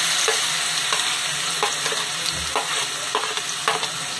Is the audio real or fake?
real